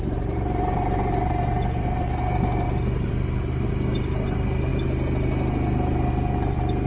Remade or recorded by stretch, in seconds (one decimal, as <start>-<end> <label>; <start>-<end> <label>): 0.0-6.9 recorded